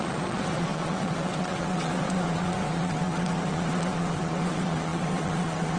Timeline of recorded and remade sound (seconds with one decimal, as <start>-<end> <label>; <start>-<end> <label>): 0.0-5.8 remade